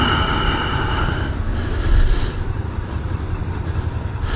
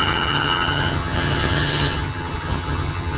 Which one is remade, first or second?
second